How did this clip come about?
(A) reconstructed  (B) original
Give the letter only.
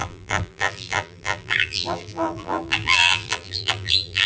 A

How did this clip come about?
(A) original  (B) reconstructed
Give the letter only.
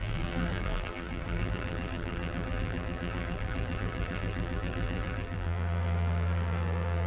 B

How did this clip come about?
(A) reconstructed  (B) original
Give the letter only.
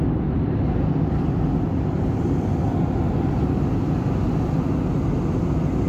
B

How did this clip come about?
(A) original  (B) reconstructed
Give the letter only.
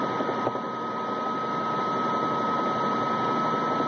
A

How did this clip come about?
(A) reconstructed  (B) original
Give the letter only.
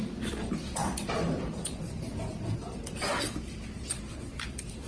A